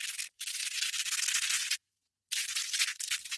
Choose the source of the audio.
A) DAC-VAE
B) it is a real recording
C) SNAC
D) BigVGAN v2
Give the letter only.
B